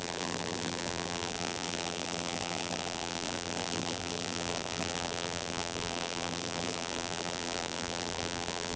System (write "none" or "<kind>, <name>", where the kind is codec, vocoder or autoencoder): vocoder, BigVGAN v2